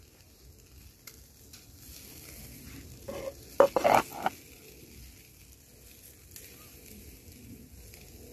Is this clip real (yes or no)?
yes